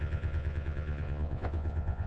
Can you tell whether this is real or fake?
fake